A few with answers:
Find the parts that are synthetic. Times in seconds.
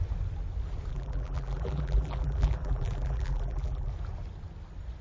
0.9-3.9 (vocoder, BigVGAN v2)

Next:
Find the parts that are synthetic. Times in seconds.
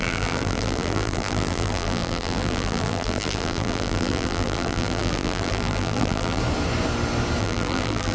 0.0-6.4 (vocoder, BigVGAN v2); 7.4-8.1